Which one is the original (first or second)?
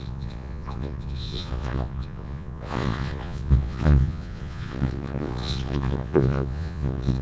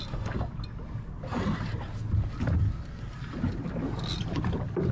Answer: second